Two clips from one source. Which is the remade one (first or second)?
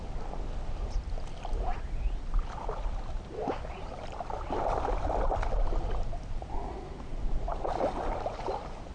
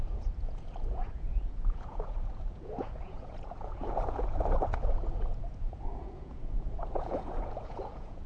second